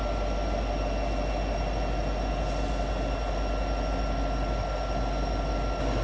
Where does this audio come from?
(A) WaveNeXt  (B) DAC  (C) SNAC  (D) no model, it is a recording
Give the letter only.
D